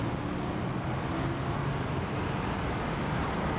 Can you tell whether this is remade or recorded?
recorded